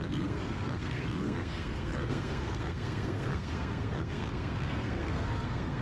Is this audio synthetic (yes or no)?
yes